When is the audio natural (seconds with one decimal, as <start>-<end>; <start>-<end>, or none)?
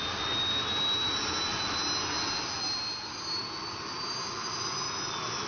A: 0.0-5.5